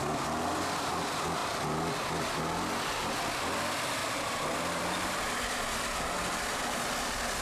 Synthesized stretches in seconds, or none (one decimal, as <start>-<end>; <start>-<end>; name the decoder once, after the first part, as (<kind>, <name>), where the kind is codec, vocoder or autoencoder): 4.0-6.6 (vocoder, BigVGAN v2)